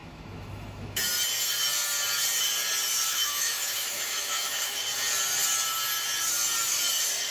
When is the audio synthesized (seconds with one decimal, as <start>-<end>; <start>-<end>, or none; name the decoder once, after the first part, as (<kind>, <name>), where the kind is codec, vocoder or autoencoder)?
0.0-1.0 (autoencoder, DAC-VAE); 3.1-4.8

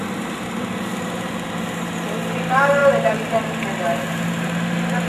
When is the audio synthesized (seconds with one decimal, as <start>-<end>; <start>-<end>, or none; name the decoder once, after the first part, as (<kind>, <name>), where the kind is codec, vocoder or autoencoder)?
none